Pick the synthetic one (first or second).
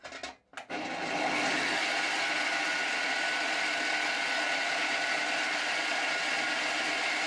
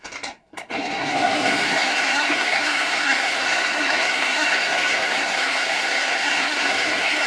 second